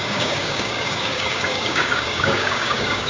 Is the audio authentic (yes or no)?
no